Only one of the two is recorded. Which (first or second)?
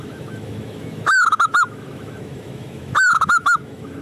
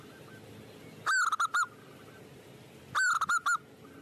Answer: second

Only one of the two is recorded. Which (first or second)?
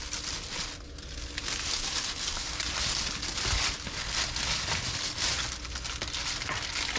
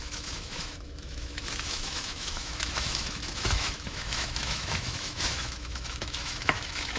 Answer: first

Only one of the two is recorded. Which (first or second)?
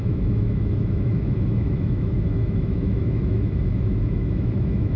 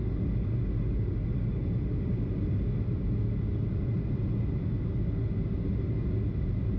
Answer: second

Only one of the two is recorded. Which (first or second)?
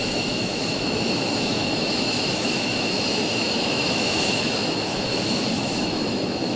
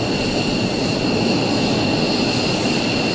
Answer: second